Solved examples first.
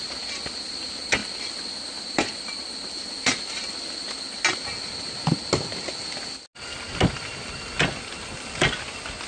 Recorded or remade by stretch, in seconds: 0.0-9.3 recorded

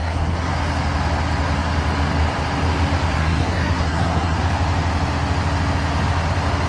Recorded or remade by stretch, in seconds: 0.0-0.5 remade; 0.5-3.1 recorded; 3.1-4.4 remade; 4.4-6.7 recorded